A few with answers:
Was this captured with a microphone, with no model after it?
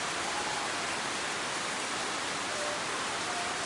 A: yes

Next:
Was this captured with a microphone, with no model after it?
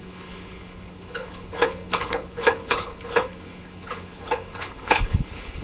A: no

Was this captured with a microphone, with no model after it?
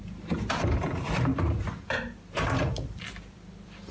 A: no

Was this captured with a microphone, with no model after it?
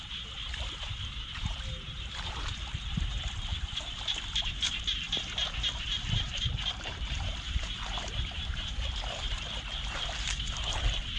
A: no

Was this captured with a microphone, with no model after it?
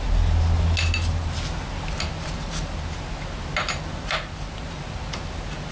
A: yes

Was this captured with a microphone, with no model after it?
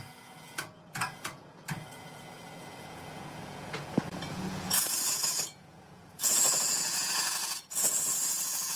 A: no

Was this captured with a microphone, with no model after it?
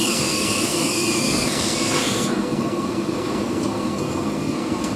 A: no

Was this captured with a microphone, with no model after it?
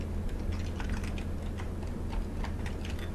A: yes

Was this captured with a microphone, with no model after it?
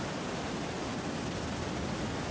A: yes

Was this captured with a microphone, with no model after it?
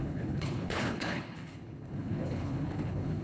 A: no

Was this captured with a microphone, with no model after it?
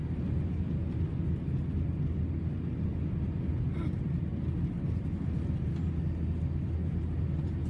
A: yes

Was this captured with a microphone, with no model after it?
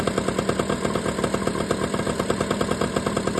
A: yes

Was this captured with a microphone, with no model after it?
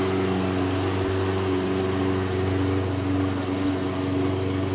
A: yes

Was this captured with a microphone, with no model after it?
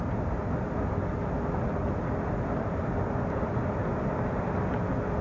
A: yes